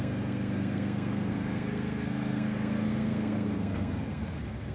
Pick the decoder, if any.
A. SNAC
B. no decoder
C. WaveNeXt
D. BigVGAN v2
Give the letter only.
A